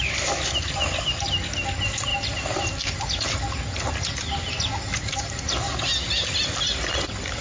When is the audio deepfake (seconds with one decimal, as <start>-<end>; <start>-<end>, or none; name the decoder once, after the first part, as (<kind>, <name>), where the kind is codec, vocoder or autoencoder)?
none